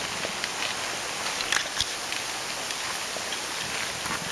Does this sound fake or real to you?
real